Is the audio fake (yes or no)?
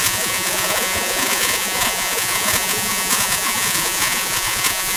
yes